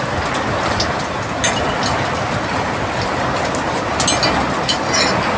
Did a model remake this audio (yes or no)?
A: no